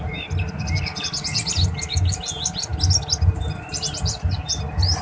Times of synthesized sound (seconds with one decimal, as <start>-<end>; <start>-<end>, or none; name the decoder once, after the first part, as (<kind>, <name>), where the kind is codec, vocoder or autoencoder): none